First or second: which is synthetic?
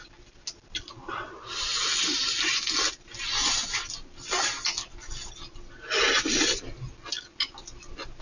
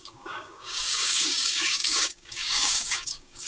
second